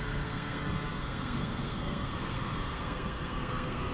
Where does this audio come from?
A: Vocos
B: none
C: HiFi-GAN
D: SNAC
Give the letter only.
D